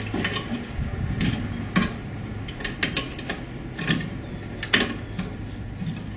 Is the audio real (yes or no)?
yes